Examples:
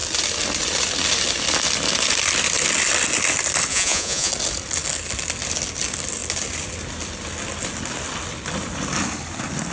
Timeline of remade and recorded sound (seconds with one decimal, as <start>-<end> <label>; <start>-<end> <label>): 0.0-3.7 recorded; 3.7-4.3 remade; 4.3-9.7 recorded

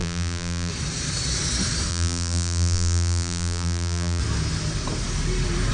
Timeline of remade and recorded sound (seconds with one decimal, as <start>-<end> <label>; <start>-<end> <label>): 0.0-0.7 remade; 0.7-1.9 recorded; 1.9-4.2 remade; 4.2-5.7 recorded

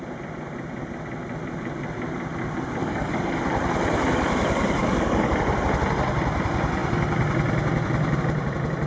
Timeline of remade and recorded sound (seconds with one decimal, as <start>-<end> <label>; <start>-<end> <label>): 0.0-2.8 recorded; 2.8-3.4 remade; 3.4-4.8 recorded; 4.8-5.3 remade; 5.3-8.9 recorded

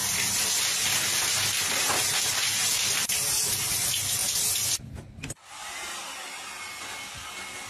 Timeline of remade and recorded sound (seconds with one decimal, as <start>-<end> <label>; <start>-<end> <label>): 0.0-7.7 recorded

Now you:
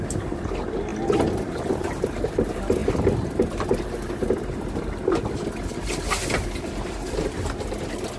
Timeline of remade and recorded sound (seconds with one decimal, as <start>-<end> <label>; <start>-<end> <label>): 0.0-2.8 recorded; 2.8-4.0 remade; 4.0-6.2 recorded; 6.2-6.7 remade; 6.7-8.2 recorded